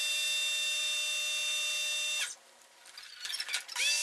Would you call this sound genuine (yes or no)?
yes